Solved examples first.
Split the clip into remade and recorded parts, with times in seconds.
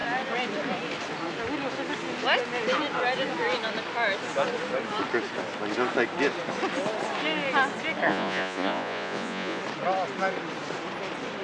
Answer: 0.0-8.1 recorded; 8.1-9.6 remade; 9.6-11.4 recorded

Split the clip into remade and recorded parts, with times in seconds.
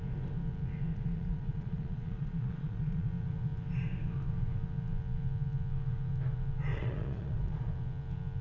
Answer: 0.0-0.9 recorded; 0.9-3.1 remade; 3.1-6.7 recorded; 6.7-7.7 remade; 7.7-8.4 recorded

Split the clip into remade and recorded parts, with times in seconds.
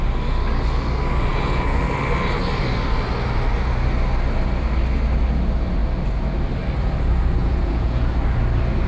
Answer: 0.0-1.3 recorded; 1.3-1.8 remade; 1.8-7.4 recorded; 7.4-8.1 remade; 8.1-8.9 recorded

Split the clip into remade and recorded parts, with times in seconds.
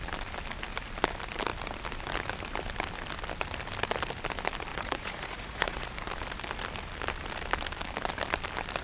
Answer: 0.0-4.7 recorded; 4.7-5.9 remade; 5.9-8.8 recorded